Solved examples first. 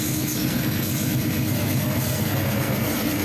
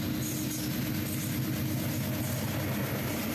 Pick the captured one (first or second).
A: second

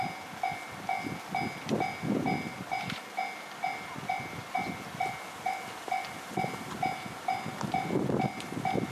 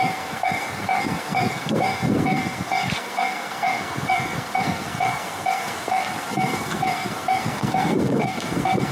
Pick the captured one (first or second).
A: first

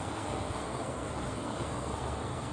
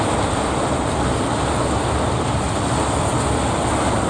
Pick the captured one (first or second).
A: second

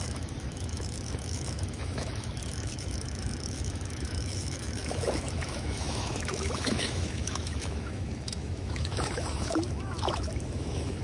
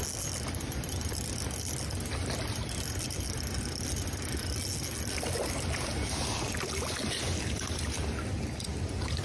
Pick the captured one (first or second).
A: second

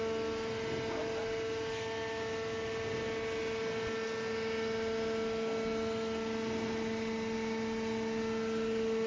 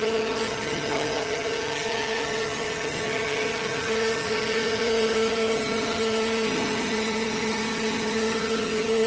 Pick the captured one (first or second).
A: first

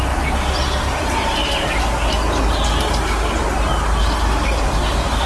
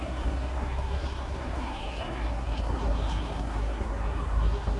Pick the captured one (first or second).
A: first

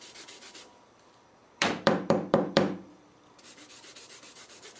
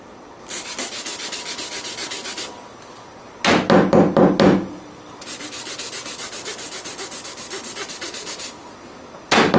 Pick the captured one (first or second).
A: second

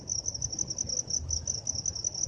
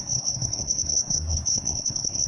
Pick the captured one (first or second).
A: first